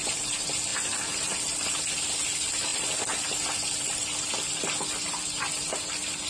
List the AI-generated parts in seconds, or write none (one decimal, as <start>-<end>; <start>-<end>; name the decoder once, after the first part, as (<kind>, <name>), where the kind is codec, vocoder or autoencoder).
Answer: none